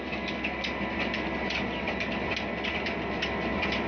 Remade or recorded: recorded